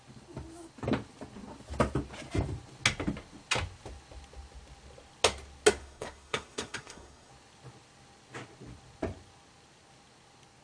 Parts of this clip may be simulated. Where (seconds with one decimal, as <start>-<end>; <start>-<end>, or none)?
5.8-7.3